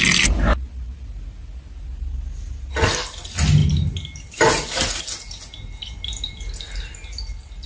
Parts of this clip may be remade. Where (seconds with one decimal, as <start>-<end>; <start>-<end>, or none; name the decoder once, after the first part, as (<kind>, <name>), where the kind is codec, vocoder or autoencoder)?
none

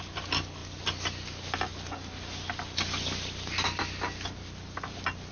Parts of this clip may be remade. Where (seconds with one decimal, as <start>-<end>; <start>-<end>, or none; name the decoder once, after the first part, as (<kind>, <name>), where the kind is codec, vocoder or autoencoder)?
none

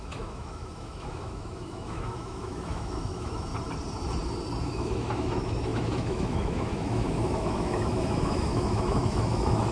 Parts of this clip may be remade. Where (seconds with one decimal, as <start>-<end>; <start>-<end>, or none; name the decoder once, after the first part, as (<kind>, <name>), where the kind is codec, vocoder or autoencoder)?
0.0-3.5 (autoencoder, DAC-VAE); 4.6-9.7

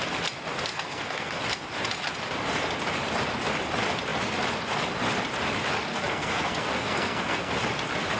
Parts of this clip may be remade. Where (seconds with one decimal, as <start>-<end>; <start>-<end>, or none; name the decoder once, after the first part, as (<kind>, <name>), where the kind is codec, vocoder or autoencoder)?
0.7-1.4 (codec, SNAC); 5.9-7.5

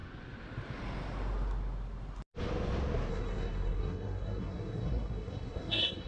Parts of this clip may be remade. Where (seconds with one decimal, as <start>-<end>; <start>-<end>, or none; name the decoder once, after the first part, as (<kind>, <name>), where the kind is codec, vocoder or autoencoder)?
3.1-6.1 (codec, SNAC)

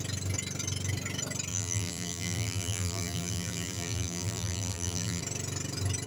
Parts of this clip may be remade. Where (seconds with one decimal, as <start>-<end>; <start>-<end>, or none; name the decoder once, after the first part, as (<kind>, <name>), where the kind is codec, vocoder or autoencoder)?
1.5-5.2 (vocoder, BigVGAN v2)

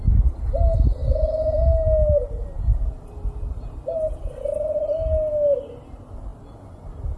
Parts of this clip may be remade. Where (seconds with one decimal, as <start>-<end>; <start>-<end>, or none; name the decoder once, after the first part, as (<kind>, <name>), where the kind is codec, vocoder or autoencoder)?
none